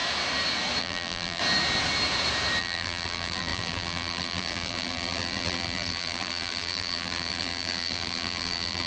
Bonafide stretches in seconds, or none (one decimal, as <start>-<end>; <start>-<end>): 0.0-0.8; 1.4-2.6